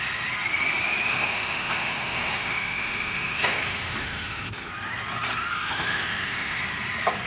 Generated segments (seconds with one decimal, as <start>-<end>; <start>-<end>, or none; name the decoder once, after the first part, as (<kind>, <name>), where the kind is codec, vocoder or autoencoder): 1.1-4.7 (autoencoder, DAC-VAE); 5.5-6.6